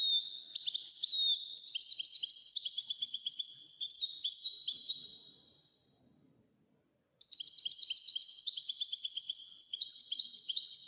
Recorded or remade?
recorded